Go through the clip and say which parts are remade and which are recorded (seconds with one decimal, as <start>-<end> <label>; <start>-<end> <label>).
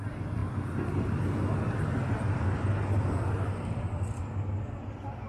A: 0.0-5.3 recorded